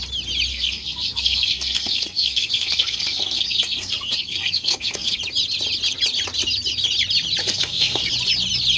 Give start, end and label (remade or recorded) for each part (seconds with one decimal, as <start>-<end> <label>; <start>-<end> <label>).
0.0-0.5 recorded; 0.5-5.2 remade; 5.2-7.4 recorded; 7.4-8.1 remade; 8.1-8.8 recorded